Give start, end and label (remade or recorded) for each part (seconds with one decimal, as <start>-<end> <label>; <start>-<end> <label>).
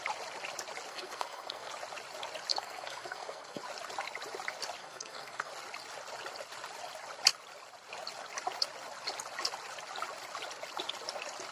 0.0-0.9 recorded; 0.9-1.7 remade; 1.7-2.5 recorded; 2.5-3.6 remade; 3.6-4.8 recorded; 4.8-5.5 remade; 5.5-11.5 recorded